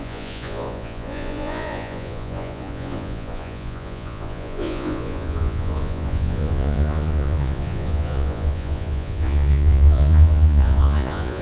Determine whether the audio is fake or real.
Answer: fake